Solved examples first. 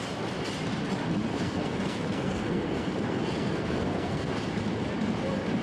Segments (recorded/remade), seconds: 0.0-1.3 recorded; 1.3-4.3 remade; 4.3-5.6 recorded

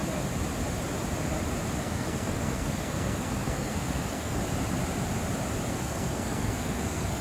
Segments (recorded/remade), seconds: 0.0-1.8 recorded; 1.8-4.4 remade; 4.4-5.7 recorded; 5.7-7.2 remade

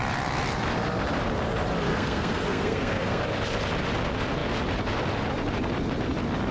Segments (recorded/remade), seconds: 0.0-1.9 recorded; 1.9-3.2 remade; 3.2-6.5 recorded

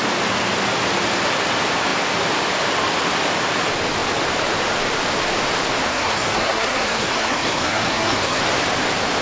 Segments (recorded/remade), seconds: 0.0-5.9 recorded; 5.9-8.4 remade; 8.4-9.2 recorded